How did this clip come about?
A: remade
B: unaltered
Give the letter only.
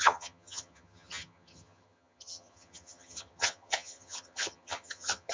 A